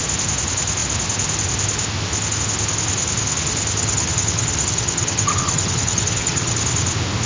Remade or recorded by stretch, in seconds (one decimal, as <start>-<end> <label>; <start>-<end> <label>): 0.0-3.8 recorded; 3.8-6.5 remade; 6.5-7.3 recorded

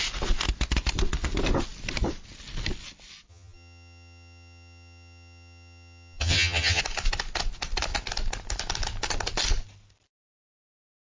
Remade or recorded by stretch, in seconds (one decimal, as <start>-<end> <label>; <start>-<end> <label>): 0.0-3.3 recorded; 3.3-6.8 remade; 6.8-11.1 recorded

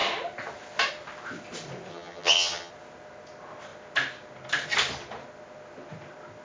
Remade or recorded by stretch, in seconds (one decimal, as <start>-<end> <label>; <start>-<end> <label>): 0.0-1.9 recorded; 1.9-2.7 remade; 2.7-6.4 recorded

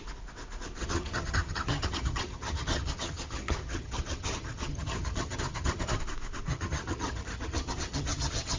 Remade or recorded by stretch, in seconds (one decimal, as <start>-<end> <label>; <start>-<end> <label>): 0.0-0.8 recorded; 0.8-6.0 remade; 6.0-6.5 recorded; 6.5-8.6 remade

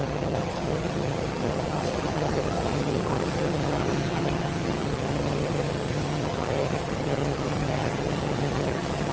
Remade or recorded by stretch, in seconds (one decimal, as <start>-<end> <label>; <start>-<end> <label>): 0.0-9.1 remade